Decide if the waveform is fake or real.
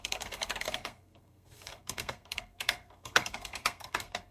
fake